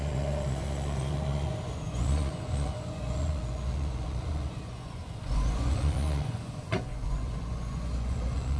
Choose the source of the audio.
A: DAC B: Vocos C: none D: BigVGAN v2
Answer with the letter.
B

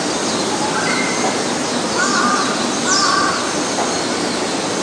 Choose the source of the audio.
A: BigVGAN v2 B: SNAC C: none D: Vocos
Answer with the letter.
C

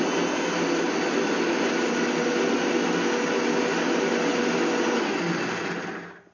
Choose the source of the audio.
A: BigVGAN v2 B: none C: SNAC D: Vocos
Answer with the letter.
B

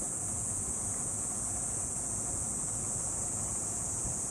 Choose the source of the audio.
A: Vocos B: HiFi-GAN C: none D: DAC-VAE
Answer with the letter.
A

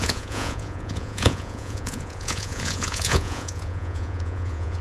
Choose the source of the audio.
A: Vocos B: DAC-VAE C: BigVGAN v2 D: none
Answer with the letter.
A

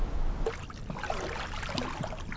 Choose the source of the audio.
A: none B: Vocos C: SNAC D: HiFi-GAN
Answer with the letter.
A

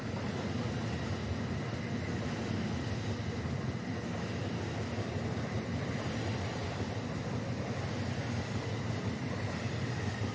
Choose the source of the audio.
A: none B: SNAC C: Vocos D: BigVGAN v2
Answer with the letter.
A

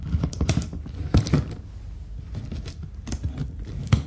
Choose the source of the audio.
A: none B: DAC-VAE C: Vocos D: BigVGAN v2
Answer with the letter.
A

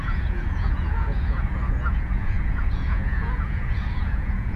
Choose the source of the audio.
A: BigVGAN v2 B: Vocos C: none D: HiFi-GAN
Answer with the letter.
B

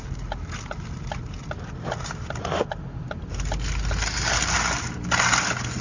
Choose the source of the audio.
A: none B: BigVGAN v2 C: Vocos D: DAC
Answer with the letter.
A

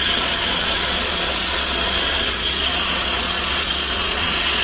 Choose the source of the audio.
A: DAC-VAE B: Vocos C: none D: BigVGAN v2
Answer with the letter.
B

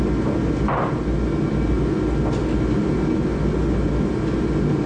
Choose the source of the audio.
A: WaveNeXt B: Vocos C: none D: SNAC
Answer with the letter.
C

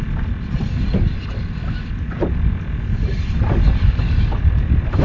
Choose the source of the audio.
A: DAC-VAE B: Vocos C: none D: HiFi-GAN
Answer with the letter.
C